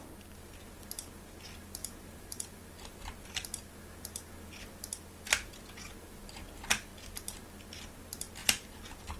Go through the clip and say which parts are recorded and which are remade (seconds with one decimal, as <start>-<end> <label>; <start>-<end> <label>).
0.0-1.8 recorded; 1.8-2.6 remade; 2.6-8.4 recorded; 8.4-9.2 remade